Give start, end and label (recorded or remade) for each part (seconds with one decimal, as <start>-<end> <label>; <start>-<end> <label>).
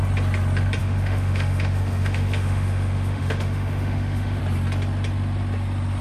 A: 0.0-0.8 recorded; 0.8-4.4 remade; 4.4-6.0 recorded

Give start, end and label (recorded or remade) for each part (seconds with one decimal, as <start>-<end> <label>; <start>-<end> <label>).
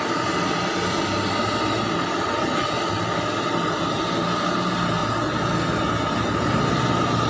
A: 0.0-7.3 recorded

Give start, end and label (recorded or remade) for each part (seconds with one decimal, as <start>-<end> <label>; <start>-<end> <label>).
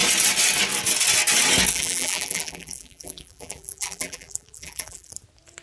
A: 0.0-1.7 recorded; 1.7-5.1 remade; 5.1-5.6 recorded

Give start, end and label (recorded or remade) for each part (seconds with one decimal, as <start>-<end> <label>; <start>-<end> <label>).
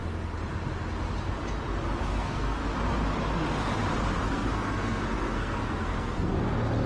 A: 0.0-2.0 recorded; 2.0-2.6 remade; 2.6-4.3 recorded; 4.3-6.3 remade; 6.3-6.9 recorded